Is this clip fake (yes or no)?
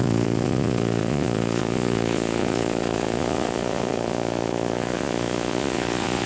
yes